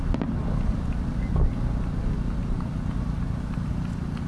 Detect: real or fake real